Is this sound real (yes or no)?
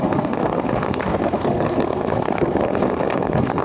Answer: no